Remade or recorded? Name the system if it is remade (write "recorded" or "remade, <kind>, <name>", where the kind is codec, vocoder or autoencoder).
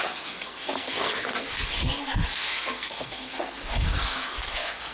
remade, codec, SNAC